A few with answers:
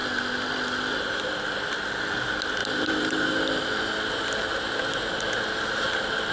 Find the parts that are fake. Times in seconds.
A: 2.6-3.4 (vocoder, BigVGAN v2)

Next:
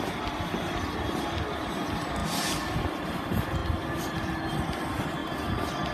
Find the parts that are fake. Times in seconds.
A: none

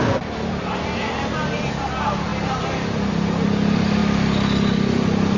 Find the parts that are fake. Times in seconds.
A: 2.3-3.1 (vocoder, BigVGAN v2)

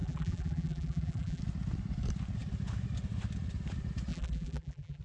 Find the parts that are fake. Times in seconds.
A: 0.0-1.4 (vocoder, BigVGAN v2); 4.1-5.0

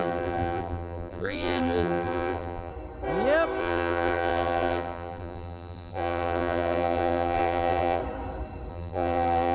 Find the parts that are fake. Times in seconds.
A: 0.0-2.7 (vocoder, BigVGAN v2); 3.6-8.0; 8.7-9.5

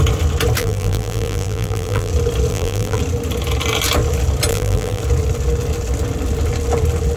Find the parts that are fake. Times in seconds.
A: 0.6-2.1 (vocoder, BigVGAN v2); 2.5-3.0; 4.5-5.0

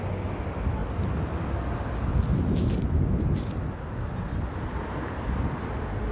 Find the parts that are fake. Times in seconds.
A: none

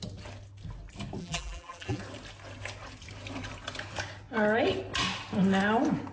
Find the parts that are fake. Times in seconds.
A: 1.2-2.0 (vocoder, BigVGAN v2)